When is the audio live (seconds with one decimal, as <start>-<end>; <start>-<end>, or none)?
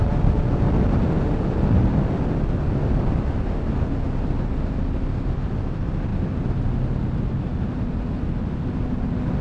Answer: 0.0-9.4